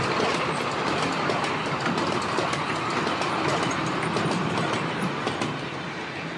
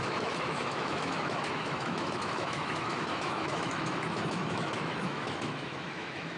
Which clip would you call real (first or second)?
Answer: first